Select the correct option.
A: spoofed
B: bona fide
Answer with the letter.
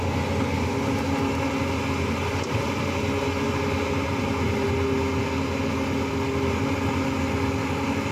B